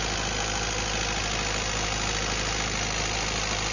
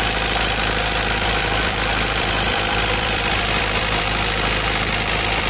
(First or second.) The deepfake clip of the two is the second